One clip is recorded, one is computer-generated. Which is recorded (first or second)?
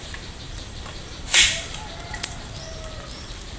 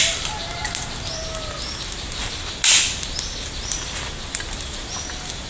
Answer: second